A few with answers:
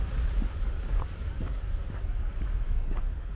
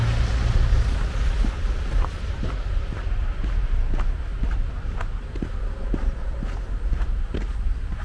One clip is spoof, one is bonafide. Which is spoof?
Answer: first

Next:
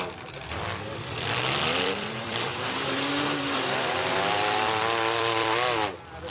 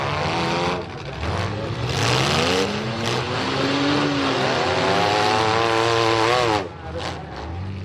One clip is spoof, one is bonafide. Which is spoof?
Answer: first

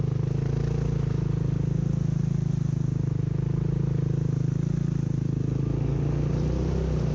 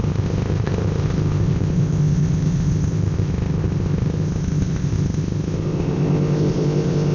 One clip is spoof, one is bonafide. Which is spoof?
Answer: second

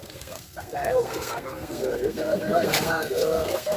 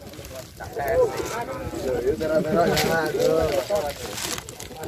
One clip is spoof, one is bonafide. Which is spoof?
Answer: first